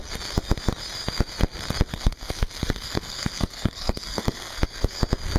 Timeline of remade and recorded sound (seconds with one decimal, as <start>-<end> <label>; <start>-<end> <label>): 0.0-1.9 recorded; 1.9-5.0 remade; 5.0-5.4 recorded